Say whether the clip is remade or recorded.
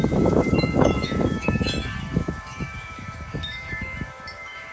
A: remade